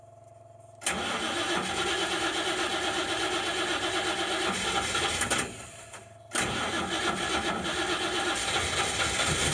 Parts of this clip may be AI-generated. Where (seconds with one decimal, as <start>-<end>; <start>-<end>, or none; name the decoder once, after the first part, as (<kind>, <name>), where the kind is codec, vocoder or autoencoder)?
none